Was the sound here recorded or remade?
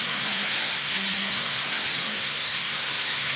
remade